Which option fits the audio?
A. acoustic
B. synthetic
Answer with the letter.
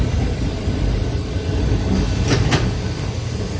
A